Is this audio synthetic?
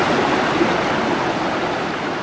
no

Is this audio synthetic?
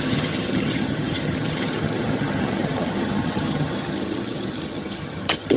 yes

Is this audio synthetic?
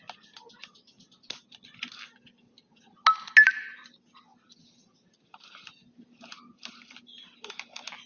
no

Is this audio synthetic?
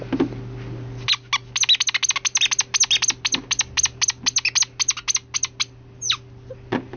no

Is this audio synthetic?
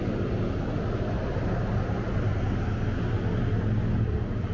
no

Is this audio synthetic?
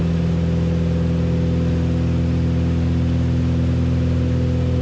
no